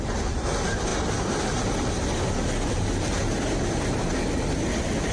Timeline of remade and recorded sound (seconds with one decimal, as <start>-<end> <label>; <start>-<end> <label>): 0.0-5.1 recorded